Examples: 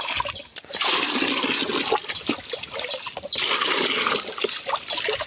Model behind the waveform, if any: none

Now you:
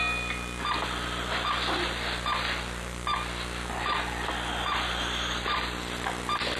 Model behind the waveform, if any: none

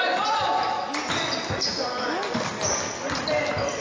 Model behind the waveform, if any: none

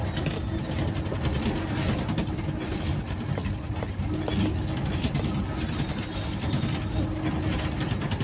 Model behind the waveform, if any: none